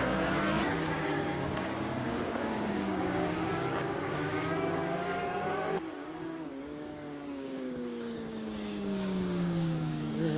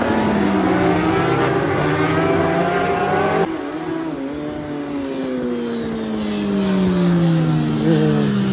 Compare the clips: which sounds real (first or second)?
second